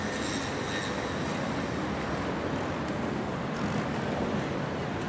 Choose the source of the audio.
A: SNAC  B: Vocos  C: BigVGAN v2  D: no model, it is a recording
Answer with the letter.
D